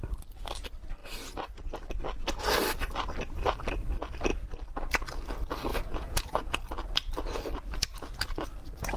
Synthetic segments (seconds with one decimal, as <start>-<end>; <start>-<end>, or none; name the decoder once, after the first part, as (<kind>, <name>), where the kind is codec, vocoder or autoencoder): 5.7-6.6 (vocoder, Vocos)